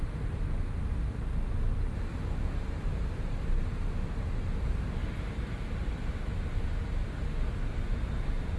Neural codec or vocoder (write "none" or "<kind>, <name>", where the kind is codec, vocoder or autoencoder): none